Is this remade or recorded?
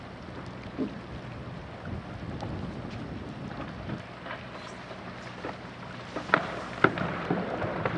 remade